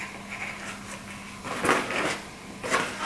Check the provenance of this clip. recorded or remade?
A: recorded